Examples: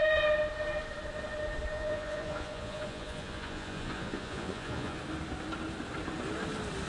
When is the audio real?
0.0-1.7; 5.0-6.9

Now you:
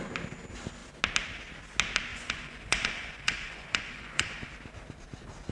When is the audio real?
0.0-2.1; 4.5-5.5

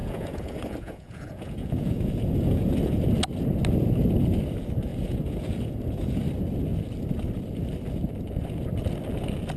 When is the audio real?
3.0-4.9; 6.2-9.6

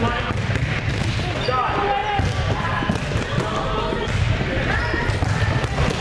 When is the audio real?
0.0-6.0

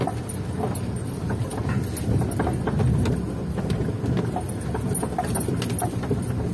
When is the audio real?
0.0-6.5

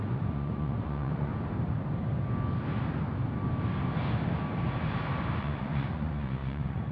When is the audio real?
1.3-5.4

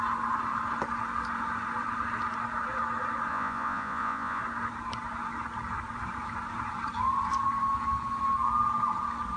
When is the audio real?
0.0-3.3; 4.4-9.4